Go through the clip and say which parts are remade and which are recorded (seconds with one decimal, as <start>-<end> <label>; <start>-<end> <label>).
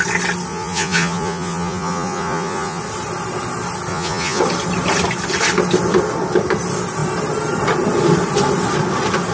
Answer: 0.0-0.5 recorded; 0.5-2.8 remade; 2.8-3.9 recorded; 3.9-4.4 remade; 4.4-9.3 recorded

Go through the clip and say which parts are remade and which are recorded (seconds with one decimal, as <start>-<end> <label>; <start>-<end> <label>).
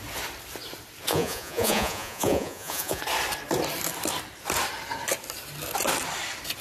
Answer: 0.0-1.1 recorded; 1.1-3.0 remade; 3.0-6.6 recorded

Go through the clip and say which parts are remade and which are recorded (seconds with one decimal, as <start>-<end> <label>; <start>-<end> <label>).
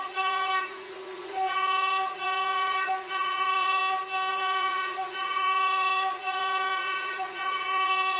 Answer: 0.0-3.8 remade; 3.8-4.3 recorded; 4.3-8.2 remade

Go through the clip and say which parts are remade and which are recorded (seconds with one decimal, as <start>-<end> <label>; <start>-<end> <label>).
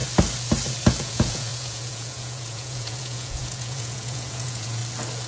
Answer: 0.0-0.9 recorded; 0.9-4.8 remade; 4.8-5.3 recorded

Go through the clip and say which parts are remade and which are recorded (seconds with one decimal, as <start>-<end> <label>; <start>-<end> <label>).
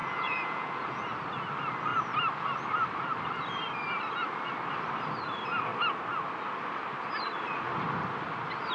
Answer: 0.0-1.0 remade; 1.0-8.7 recorded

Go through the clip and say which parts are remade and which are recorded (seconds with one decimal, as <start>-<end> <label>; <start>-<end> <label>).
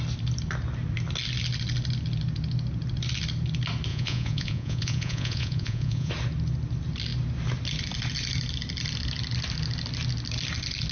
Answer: 0.0-3.9 recorded; 3.9-6.1 remade; 6.1-10.9 recorded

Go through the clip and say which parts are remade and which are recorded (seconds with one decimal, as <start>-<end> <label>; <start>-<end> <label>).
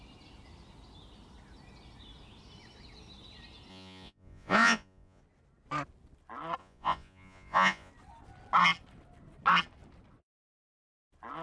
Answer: 0.0-3.7 recorded; 3.7-5.2 remade; 5.2-6.6 recorded; 6.6-7.9 remade; 7.9-11.4 recorded